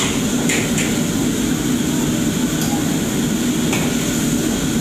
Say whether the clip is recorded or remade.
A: recorded